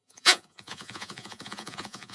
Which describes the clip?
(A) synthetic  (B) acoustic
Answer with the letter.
A